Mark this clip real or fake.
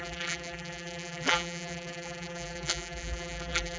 fake